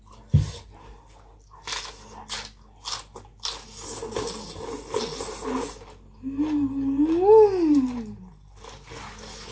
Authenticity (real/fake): real